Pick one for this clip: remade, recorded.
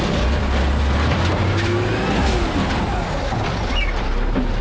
recorded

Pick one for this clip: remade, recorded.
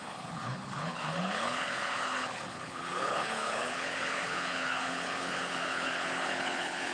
remade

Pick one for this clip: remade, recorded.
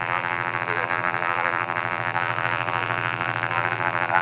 remade